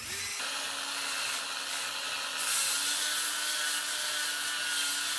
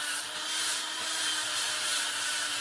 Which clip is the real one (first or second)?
first